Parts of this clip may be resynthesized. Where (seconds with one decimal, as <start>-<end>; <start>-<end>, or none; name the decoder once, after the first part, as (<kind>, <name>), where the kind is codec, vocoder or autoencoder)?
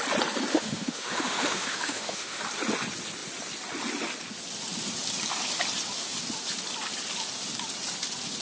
0.5-2.4 (autoencoder, DAC-VAE)